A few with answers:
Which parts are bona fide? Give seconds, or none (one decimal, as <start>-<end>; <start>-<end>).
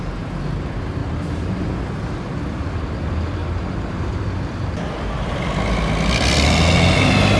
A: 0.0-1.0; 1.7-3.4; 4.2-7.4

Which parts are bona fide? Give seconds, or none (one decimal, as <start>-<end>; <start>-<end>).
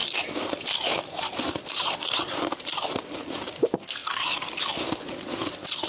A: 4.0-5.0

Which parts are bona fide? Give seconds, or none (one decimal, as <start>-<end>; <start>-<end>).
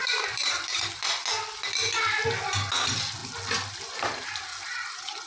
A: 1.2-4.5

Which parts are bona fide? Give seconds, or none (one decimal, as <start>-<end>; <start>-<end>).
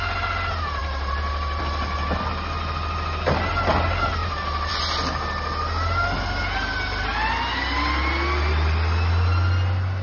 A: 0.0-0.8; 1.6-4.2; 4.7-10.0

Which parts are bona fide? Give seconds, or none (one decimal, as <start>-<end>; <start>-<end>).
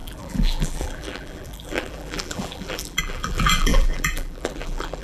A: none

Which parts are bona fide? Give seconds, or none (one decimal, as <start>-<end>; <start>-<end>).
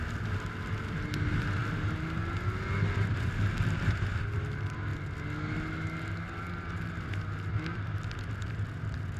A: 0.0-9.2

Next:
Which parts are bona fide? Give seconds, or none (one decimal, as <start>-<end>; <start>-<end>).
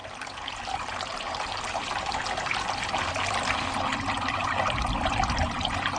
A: 3.6-6.0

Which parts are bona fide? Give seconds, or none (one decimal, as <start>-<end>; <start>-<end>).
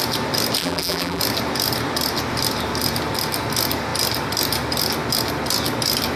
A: 0.0-0.6; 1.2-6.2